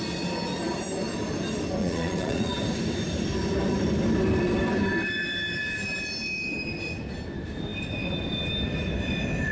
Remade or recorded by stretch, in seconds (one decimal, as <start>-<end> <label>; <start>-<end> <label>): 0.0-1.8 recorded; 1.8-2.5 remade; 2.5-9.5 recorded